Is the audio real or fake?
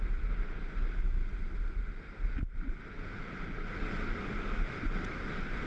real